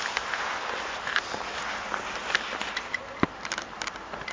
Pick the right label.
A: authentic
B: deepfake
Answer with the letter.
A